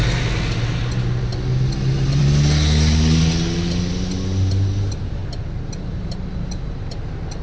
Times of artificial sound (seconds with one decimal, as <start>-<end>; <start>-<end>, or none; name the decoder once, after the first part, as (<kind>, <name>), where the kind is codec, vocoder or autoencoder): none